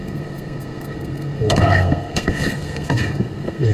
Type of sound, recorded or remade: remade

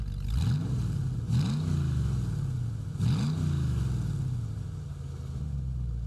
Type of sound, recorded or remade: recorded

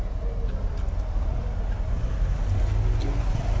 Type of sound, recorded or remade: recorded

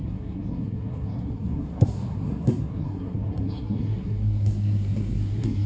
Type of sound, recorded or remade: remade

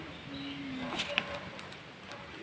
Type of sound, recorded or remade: recorded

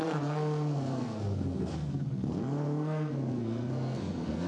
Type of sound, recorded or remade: remade